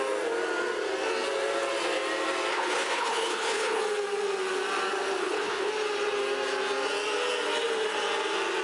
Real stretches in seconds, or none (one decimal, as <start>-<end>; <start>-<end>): 0.0-2.5; 3.8-5.2; 5.7-8.6